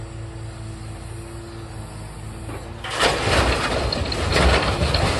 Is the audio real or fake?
real